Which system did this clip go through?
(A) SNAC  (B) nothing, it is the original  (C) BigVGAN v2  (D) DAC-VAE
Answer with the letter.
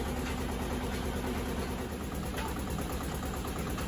B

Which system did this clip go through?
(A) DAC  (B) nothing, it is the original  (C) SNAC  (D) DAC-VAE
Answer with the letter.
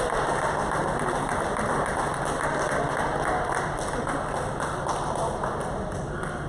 B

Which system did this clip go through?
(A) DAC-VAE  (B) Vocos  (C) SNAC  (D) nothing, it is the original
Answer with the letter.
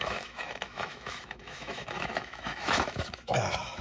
A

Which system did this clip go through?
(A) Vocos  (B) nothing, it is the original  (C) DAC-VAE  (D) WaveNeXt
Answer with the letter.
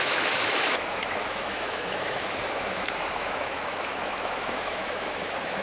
C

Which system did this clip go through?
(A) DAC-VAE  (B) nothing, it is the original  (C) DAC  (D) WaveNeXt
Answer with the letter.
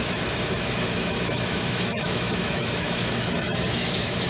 A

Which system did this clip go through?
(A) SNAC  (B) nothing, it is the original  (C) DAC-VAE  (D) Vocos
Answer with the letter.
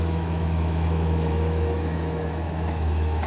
C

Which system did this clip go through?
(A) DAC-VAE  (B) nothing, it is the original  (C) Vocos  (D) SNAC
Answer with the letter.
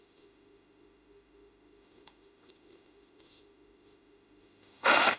A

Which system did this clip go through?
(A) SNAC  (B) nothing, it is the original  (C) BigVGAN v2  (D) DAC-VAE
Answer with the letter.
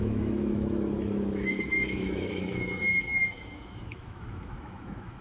D